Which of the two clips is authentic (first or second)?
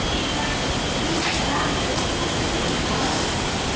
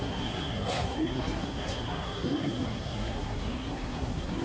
first